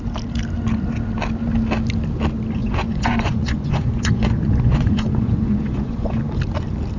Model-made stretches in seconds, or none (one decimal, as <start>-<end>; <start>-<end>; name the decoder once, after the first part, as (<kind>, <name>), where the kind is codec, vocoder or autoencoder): 2.6-6.2 (vocoder, Vocos)

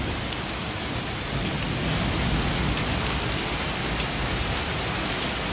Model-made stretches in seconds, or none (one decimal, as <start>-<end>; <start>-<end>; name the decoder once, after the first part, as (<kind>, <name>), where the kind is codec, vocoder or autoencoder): none

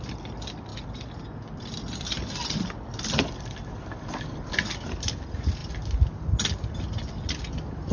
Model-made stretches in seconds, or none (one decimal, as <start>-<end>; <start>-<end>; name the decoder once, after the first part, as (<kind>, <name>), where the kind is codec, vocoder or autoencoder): none

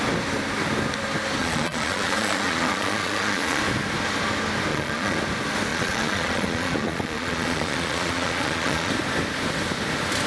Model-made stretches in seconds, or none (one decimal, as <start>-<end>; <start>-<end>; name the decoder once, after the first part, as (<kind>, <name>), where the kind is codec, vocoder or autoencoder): 1.4-3.6 (vocoder, Vocos); 4.7-5.2; 5.7-8.9

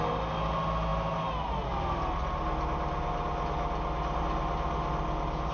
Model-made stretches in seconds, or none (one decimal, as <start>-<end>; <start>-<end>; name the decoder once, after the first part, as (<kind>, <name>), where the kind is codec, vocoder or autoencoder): none